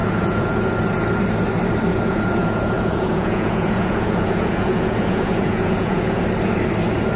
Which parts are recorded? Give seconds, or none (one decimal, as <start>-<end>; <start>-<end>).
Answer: 0.8-1.9; 6.2-7.2